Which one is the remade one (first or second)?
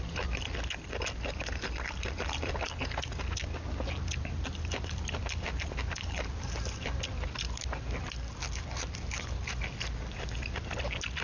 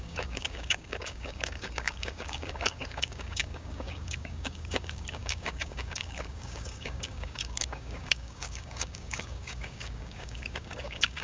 second